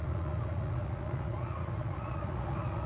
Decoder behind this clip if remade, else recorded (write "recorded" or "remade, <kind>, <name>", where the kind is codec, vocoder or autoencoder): remade, vocoder, Vocos